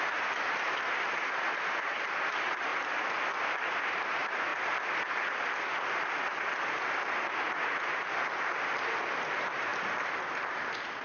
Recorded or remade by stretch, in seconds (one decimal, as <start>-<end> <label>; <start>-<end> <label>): 0.0-2.7 remade; 2.7-3.8 recorded; 3.8-4.5 remade; 4.5-9.2 recorded; 9.2-9.7 remade; 9.7-11.0 recorded

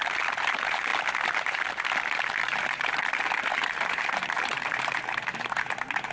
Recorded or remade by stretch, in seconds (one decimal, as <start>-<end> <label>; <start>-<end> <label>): 0.0-0.9 remade; 0.9-2.4 recorded; 2.4-6.1 remade

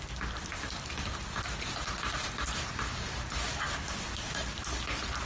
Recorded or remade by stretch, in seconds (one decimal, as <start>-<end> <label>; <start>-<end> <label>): 0.0-0.5 recorded; 0.5-2.5 remade; 2.5-5.3 recorded

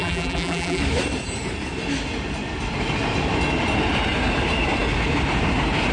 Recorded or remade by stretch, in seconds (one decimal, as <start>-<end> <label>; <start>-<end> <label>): 0.0-0.8 remade; 0.8-5.9 recorded

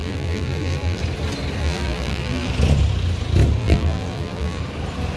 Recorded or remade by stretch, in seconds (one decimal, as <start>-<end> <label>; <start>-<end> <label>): 0.0-1.0 remade; 1.0-1.6 recorded; 1.6-2.5 remade; 2.5-3.6 recorded; 3.6-4.6 remade; 4.6-5.2 recorded

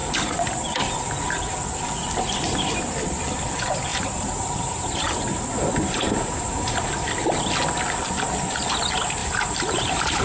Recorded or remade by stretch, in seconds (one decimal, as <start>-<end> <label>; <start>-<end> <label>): 0.0-3.9 recorded; 3.9-6.9 remade; 6.9-9.2 recorded; 9.2-10.2 remade

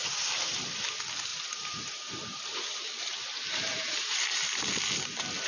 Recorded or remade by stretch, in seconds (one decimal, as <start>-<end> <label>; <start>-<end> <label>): 0.0-0.8 remade; 0.8-1.3 recorded; 1.3-4.6 remade; 4.6-5.5 recorded

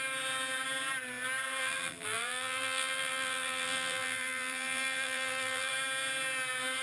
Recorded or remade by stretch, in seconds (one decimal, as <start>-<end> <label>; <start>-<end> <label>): 0.0-1.6 recorded; 1.6-5.7 remade; 5.7-6.8 recorded